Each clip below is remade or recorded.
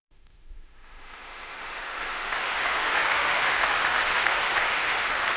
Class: remade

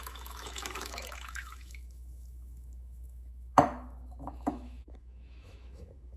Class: remade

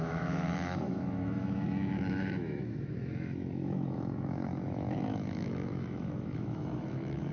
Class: remade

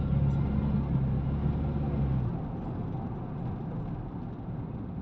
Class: recorded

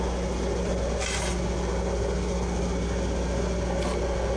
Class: recorded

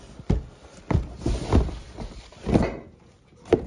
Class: recorded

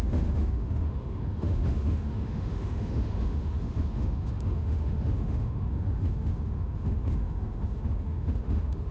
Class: remade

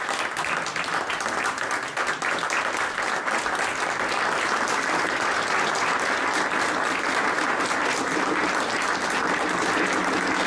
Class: recorded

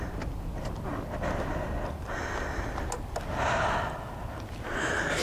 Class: recorded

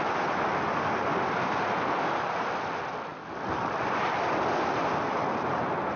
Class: recorded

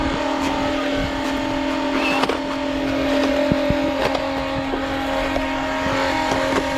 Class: recorded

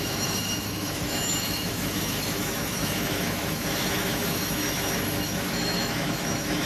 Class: remade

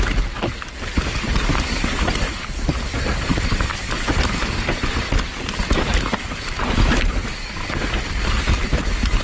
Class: recorded